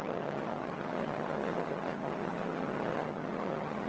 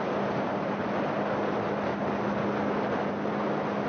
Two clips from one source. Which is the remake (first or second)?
first